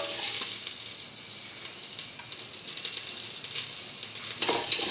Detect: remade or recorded recorded